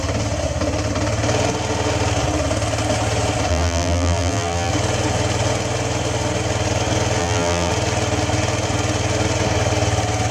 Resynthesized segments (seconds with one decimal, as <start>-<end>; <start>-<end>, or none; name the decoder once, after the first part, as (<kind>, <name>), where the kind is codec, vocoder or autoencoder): 3.5-4.7 (vocoder, BigVGAN v2); 7.2-7.7